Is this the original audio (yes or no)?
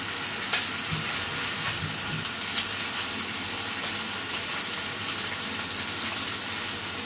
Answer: yes